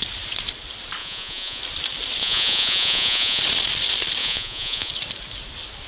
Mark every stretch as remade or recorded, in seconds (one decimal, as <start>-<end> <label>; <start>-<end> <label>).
0.0-1.0 recorded; 1.0-1.6 remade; 1.6-2.2 recorded; 2.2-3.4 remade; 3.4-4.2 recorded; 4.2-4.9 remade; 4.9-5.9 recorded